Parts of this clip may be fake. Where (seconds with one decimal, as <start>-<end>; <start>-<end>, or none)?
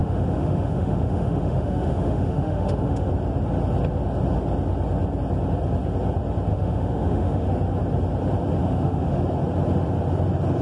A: 0.0-3.1; 6.5-7.5; 8.6-9.2